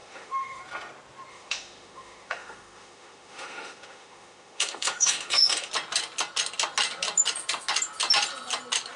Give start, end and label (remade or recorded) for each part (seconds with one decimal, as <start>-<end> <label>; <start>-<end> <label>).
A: 0.0-0.6 remade; 0.6-1.3 recorded; 1.3-5.7 remade; 5.7-9.0 recorded